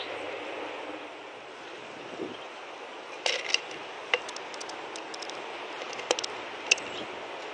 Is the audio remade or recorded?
recorded